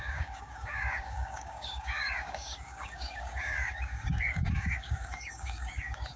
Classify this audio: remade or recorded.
remade